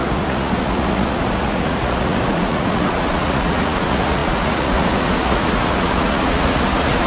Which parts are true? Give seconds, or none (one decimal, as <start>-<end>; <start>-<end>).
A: none